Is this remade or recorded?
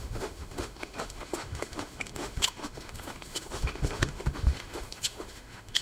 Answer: remade